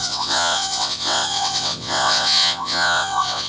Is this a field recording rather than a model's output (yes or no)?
no